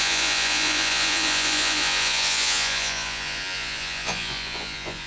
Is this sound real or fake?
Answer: fake